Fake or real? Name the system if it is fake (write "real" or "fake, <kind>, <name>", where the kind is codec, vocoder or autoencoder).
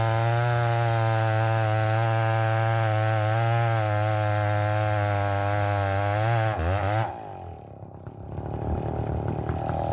real